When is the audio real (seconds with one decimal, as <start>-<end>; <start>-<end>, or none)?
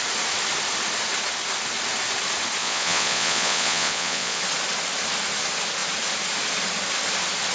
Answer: 0.0-2.6; 4.4-7.5